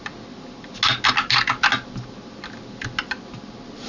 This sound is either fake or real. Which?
real